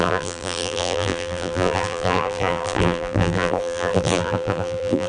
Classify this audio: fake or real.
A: fake